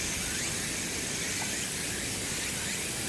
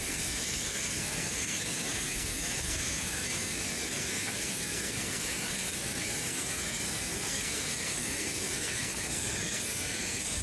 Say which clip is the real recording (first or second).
first